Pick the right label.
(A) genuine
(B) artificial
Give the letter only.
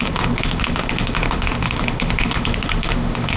B